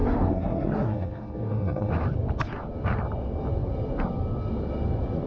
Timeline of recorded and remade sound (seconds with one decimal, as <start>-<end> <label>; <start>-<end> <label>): 0.0-1.9 remade; 1.9-5.3 recorded

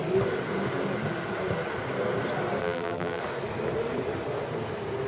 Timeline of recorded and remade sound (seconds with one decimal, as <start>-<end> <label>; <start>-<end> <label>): 0.0-2.6 recorded; 2.6-3.2 remade; 3.2-5.1 recorded

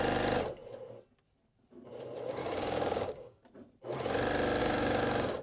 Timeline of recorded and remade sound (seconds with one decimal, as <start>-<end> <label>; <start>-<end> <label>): 0.0-2.4 recorded; 2.4-3.4 remade; 3.4-4.6 recorded; 4.6-5.4 remade

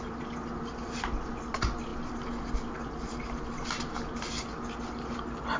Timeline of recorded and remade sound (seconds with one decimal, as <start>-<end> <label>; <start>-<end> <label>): 0.0-5.6 recorded

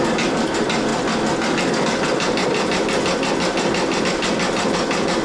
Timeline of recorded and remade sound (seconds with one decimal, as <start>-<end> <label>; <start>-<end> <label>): 0.0-5.2 recorded

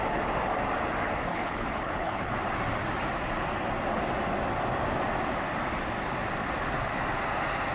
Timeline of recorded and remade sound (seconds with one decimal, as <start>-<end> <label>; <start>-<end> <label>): 0.0-1.3 recorded; 1.3-2.3 remade; 2.3-7.7 recorded

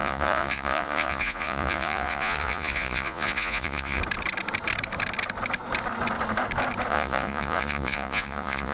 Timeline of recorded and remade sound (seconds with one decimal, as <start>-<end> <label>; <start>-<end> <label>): 0.0-4.0 remade; 4.0-6.9 recorded; 6.9-8.7 remade